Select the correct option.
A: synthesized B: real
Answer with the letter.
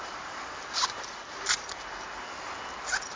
B